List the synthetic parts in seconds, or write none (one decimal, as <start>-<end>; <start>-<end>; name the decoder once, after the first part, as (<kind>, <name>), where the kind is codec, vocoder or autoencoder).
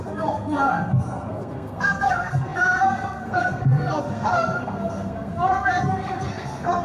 0.0-6.8 (codec, SNAC)